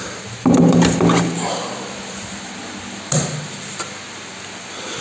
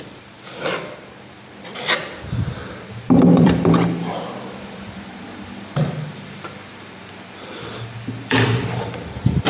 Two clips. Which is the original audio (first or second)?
first